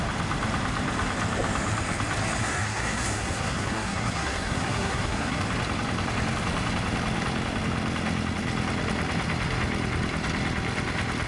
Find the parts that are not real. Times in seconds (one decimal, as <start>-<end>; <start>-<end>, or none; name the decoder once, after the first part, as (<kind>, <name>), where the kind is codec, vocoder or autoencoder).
2.4-5.4 (codec, SNAC)

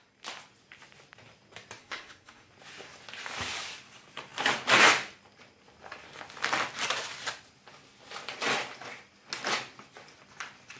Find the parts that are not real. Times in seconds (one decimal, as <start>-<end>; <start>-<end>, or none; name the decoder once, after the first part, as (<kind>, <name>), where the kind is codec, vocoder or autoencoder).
1.8-2.5 (codec, SNAC)

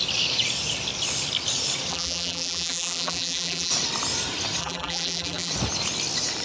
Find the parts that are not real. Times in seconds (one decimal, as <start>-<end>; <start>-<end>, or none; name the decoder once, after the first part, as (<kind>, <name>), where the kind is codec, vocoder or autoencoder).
1.9-3.7 (vocoder, BigVGAN v2); 4.6-5.5